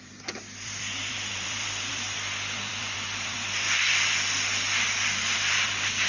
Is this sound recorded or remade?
remade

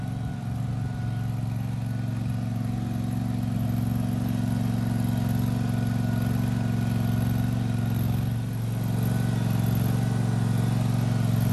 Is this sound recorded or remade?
recorded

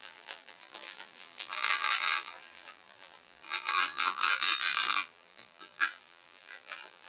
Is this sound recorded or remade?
remade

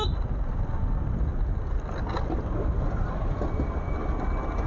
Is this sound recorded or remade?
recorded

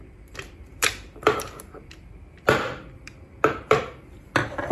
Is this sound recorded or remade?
remade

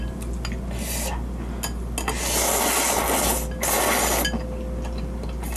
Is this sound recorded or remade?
recorded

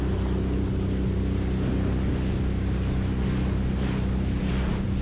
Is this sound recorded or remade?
recorded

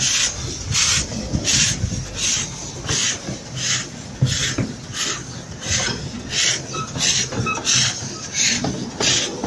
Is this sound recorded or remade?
recorded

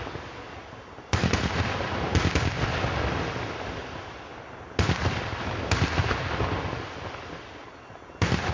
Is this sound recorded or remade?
recorded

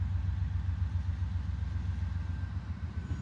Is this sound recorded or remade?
recorded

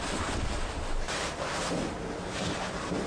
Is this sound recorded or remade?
remade